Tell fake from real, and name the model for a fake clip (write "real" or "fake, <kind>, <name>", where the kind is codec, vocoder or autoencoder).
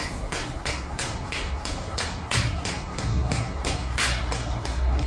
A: fake, codec, SNAC